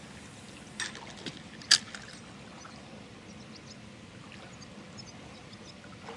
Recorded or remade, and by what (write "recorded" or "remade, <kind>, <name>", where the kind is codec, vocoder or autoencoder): recorded